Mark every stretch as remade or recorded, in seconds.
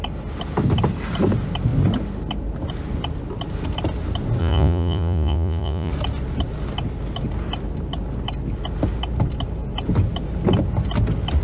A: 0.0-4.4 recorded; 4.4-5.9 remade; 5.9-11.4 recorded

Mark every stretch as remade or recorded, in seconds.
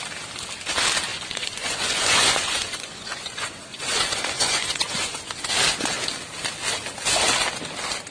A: 0.0-1.1 recorded; 1.1-5.3 remade; 5.3-8.1 recorded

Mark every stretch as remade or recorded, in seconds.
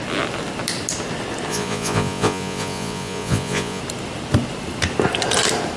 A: 0.0-1.5 recorded; 1.5-3.8 remade; 3.8-5.8 recorded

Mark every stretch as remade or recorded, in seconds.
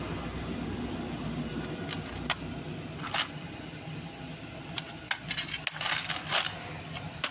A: 0.0-7.3 recorded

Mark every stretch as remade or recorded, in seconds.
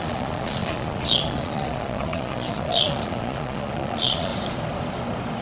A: 0.0-4.3 remade; 4.3-5.4 recorded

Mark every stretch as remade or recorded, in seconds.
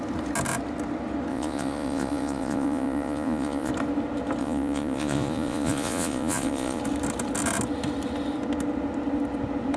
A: 0.0-1.3 recorded; 1.3-3.7 remade; 3.7-4.4 recorded; 4.4-6.8 remade; 6.8-9.8 recorded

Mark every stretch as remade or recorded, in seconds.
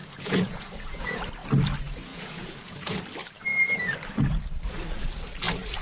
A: 0.0-1.2 remade; 1.2-2.1 recorded; 2.1-3.0 remade; 3.0-5.8 recorded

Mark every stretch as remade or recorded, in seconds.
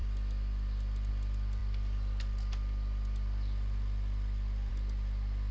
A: 0.0-5.5 recorded